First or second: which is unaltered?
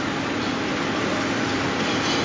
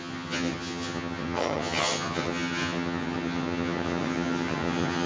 first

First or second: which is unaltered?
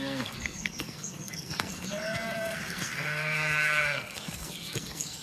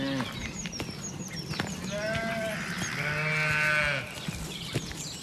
second